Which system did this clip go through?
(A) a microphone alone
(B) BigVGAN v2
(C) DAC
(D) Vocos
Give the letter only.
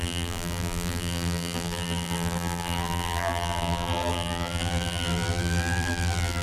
B